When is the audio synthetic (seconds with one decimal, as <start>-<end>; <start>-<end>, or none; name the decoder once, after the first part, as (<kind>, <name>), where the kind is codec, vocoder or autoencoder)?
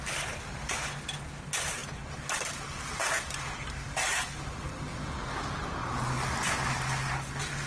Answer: 3.0-3.5 (vocoder, BigVGAN v2)